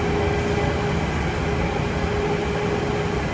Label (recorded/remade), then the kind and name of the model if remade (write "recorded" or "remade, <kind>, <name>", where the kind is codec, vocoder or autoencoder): recorded